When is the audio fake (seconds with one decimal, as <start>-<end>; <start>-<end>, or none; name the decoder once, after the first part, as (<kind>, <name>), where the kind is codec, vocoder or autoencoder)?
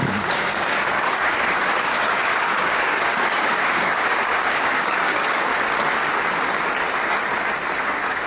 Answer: 0.0-5.5 (codec, DAC); 7.8-8.3